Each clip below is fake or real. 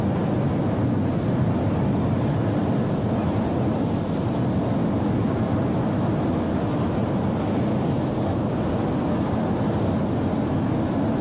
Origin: real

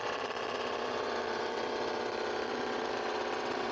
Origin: fake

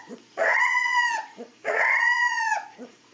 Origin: fake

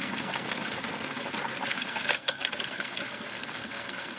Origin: fake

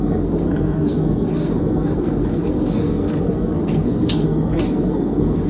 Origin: fake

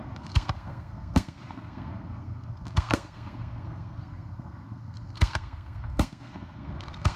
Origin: fake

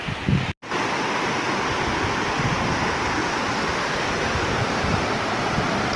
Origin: real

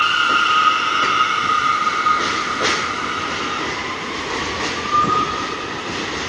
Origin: real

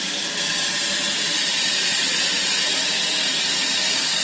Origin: real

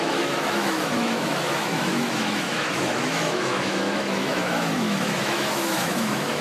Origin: fake